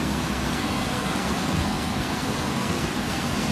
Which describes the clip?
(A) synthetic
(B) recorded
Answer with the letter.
A